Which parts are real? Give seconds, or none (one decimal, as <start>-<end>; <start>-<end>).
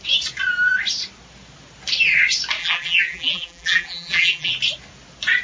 0.0-2.6; 4.5-5.4